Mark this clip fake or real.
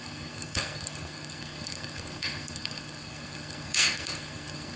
fake